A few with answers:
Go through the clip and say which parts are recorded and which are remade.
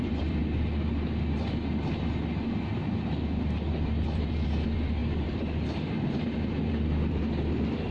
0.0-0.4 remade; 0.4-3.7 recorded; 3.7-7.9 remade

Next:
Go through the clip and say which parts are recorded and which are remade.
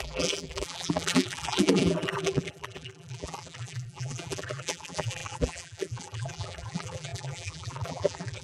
0.0-8.4 remade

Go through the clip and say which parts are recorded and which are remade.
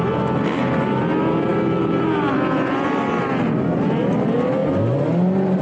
0.0-5.6 recorded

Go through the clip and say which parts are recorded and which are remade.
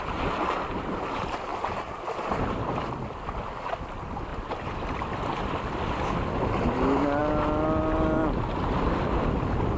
0.0-4.3 recorded; 4.3-5.6 remade; 5.6-9.8 recorded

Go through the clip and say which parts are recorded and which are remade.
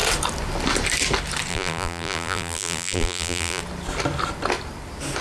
0.0-1.5 recorded; 1.5-3.6 remade; 3.6-5.2 recorded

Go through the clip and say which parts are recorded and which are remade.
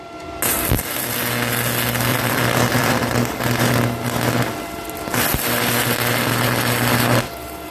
0.0-0.5 recorded; 0.5-1.0 remade; 1.0-2.1 recorded; 2.1-3.7 remade; 3.7-7.7 recorded